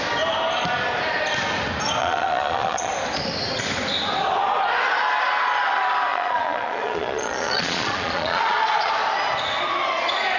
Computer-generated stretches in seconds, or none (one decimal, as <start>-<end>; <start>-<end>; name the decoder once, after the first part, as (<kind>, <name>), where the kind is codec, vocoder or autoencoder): 2.0-2.9 (vocoder, Vocos); 6.1-8.9